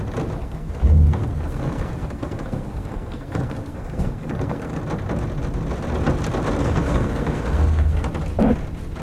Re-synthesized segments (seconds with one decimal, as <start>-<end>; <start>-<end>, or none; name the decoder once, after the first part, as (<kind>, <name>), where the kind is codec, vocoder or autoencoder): 0.4-4.8 (codec, SNAC); 6.6-8.1